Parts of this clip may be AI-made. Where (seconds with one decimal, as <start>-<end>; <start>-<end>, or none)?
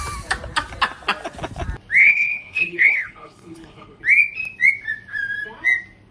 2.0-4.0